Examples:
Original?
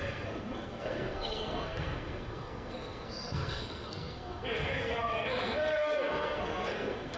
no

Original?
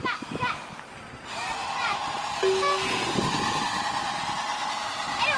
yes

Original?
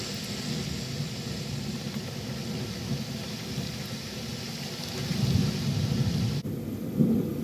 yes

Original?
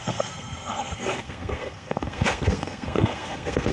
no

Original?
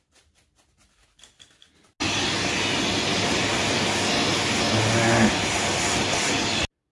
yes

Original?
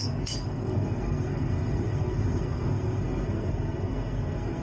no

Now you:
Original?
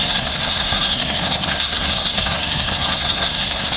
no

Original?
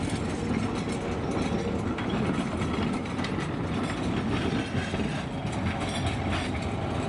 yes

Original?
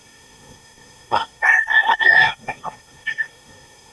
no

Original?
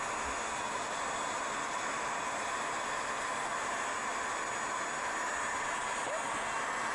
yes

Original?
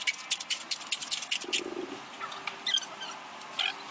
yes